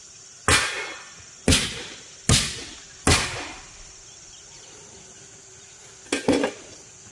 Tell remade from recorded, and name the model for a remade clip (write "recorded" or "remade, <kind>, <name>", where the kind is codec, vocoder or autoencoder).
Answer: recorded